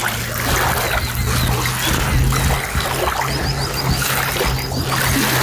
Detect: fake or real real